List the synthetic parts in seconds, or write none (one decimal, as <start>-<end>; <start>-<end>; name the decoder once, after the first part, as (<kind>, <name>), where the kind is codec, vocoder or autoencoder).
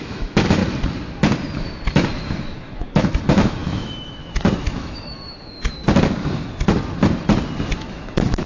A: 0.0-0.6 (autoencoder, DAC-VAE); 1.9-5.8; 7.7-8.5